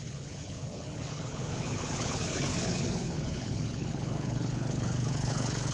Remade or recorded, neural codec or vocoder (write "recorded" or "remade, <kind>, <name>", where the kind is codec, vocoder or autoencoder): remade, codec, HILCodec